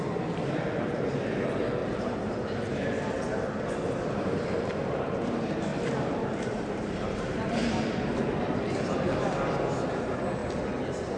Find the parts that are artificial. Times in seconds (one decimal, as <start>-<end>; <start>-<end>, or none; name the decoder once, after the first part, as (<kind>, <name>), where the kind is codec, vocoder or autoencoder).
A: 0.0-1.8 (vocoder, BigVGAN v2); 4.1-10.4